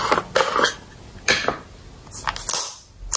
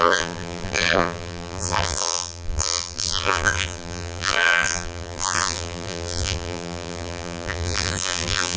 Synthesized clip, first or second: second